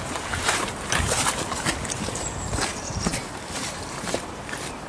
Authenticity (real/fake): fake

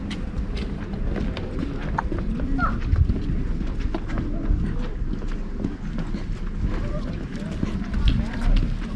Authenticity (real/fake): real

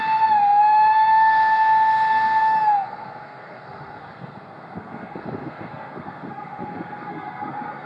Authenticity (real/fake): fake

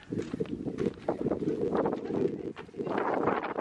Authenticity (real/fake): fake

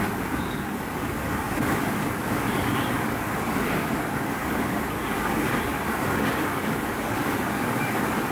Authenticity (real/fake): fake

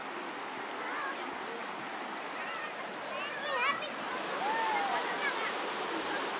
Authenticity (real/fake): real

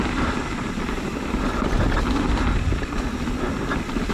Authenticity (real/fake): fake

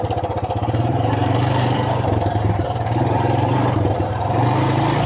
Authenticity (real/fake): fake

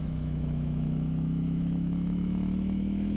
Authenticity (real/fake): fake